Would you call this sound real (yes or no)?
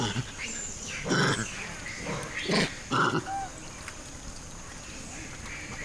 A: yes